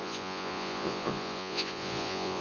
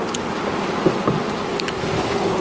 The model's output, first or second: first